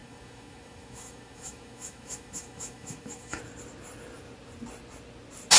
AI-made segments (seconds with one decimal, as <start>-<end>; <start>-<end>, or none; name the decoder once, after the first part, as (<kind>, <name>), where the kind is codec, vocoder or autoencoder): 0.0-3.4 (autoencoder, DAC-VAE)